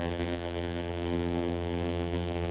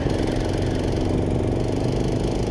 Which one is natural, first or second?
second